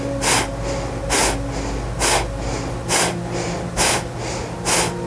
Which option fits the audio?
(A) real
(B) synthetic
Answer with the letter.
A